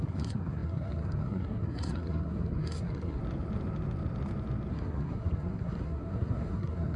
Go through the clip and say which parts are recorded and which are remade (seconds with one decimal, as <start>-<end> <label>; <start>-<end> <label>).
0.0-3.2 remade; 3.2-4.7 recorded; 4.7-7.0 remade